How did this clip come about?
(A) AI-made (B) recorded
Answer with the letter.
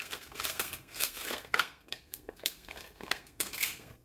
A